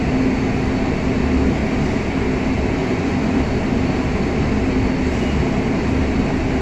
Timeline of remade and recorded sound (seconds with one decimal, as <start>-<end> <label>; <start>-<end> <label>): 0.0-2.8 recorded; 2.8-3.4 remade; 3.4-6.6 recorded